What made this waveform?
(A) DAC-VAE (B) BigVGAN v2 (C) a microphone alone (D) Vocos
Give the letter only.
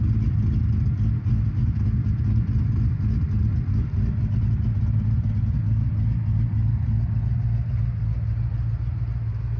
C